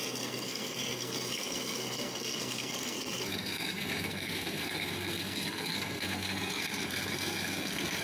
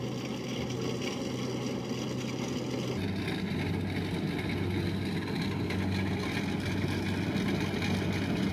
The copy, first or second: first